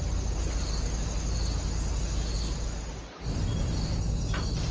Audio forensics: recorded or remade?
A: recorded